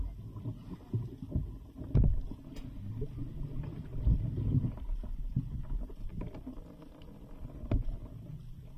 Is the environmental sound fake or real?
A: real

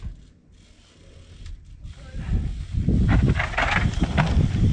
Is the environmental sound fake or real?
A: real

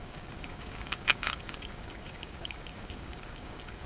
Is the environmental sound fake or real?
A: fake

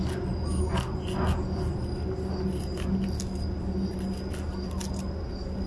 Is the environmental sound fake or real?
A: real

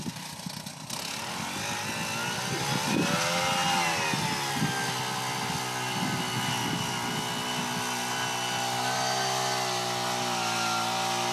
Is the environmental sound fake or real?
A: real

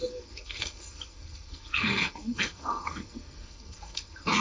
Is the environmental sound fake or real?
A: fake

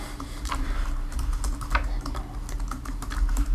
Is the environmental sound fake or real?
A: real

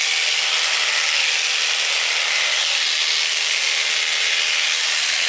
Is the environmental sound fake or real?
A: real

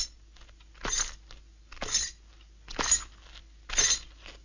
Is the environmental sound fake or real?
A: real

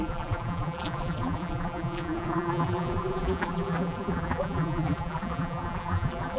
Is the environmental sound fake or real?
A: fake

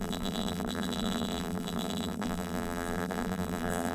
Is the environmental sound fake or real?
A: fake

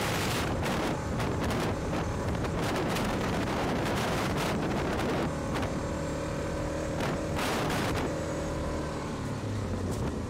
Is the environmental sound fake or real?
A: fake